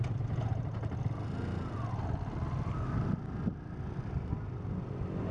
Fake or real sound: real